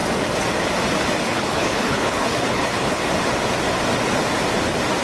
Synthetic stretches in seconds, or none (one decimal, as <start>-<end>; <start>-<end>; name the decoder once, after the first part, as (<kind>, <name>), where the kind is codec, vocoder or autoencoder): 1.2-3.0 (codec, HILCodec)